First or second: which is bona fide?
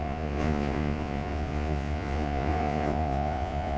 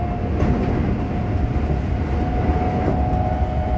second